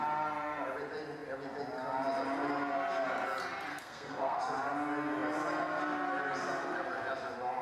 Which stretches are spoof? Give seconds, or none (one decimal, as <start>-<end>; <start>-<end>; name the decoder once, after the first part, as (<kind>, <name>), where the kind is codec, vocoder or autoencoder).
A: 3.7-4.4 (codec, SNAC)